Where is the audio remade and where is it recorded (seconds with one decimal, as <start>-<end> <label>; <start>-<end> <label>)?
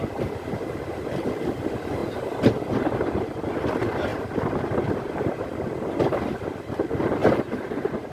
0.0-4.1 recorded; 4.1-6.5 remade; 6.5-8.1 recorded